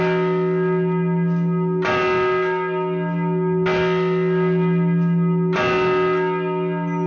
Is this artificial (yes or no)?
no